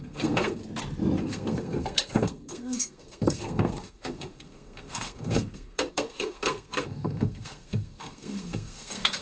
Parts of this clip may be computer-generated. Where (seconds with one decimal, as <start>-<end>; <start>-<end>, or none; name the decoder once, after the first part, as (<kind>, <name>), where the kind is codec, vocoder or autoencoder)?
0.0-0.6 (codec, SNAC); 1.2-9.2